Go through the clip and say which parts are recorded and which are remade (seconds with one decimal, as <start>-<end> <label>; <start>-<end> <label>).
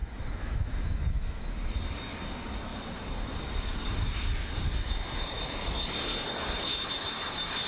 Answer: 0.0-1.7 remade; 1.7-6.7 recorded; 6.7-7.7 remade